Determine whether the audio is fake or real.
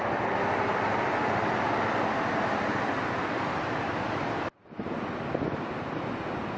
real